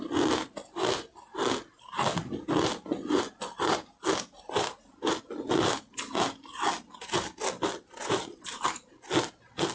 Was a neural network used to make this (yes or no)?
no